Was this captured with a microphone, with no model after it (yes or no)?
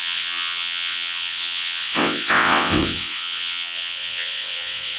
no